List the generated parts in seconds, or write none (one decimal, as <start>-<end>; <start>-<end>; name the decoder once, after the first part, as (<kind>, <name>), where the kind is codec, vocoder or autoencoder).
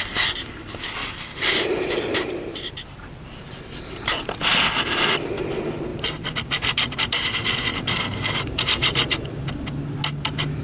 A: 1.0-4.2 (vocoder, BigVGAN v2); 5.9-9.2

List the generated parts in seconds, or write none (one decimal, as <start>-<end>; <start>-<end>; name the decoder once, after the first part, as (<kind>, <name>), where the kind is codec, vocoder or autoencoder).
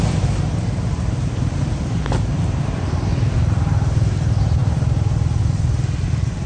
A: 0.0-4.6 (vocoder, BigVGAN v2); 5.4-6.5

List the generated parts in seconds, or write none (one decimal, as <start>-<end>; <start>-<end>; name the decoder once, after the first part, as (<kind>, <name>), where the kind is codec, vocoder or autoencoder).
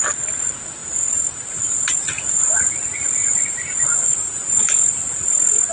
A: 3.2-4.6 (vocoder, BigVGAN v2)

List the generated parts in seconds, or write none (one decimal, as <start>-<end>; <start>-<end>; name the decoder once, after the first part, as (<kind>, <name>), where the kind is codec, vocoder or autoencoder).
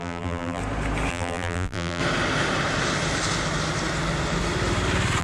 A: 0.0-0.6 (vocoder, BigVGAN v2); 1.1-2.0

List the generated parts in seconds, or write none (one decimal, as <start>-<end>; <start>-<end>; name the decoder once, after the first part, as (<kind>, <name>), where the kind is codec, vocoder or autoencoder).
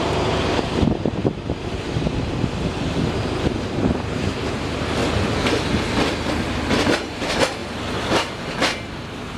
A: 0.0-5.0 (vocoder, BigVGAN v2); 6.7-7.6; 8.1-9.4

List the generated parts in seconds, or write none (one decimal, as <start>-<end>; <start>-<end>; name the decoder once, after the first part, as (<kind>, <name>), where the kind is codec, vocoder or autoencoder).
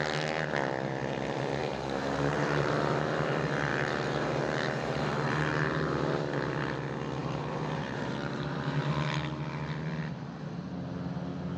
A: 1.6-2.7 (vocoder, BigVGAN v2); 3.7-6.0; 7.2-8.8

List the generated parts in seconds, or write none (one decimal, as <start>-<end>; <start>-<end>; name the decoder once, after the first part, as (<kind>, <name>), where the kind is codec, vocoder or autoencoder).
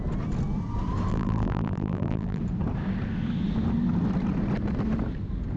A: 1.1-2.4 (vocoder, BigVGAN v2)